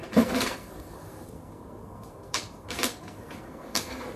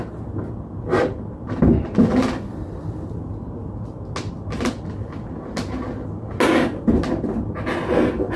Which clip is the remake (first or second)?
first